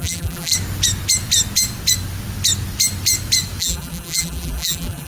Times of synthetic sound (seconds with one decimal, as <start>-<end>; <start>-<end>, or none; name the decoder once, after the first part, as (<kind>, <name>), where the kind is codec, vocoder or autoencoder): 0.0-0.5 (vocoder, BigVGAN v2); 3.6-5.1